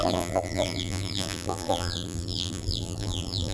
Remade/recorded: remade